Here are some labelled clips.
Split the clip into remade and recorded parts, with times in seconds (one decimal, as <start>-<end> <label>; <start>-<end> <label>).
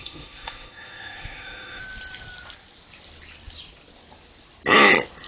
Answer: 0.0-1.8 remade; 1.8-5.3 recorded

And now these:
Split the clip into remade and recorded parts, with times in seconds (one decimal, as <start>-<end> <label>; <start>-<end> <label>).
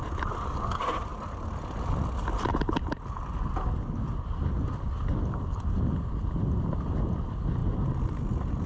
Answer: 0.0-8.7 recorded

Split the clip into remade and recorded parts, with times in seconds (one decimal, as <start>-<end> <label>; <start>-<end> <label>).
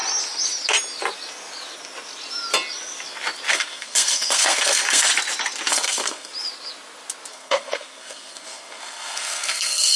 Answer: 0.0-3.5 recorded; 3.5-5.1 remade; 5.1-5.7 recorded; 5.7-6.3 remade; 6.3-7.3 recorded; 7.3-10.0 remade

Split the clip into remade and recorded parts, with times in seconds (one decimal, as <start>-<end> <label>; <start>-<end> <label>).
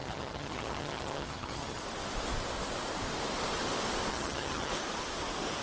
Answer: 0.0-1.8 remade; 1.8-4.1 recorded; 4.1-4.7 remade; 4.7-5.6 recorded